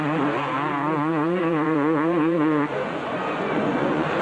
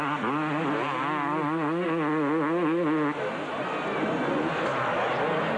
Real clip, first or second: second